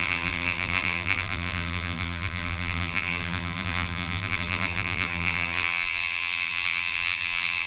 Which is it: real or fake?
fake